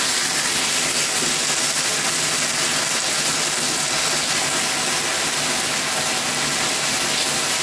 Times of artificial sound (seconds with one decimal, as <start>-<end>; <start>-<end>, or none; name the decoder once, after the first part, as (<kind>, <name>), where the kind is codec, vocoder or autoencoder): none